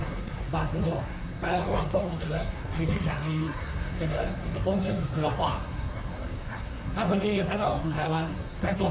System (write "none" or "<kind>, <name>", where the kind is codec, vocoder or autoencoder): codec, SNAC